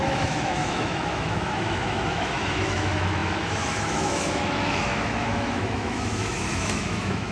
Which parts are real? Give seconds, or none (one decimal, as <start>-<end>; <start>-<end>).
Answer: none